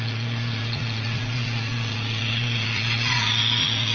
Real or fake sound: fake